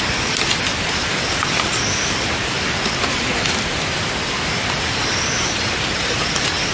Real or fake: real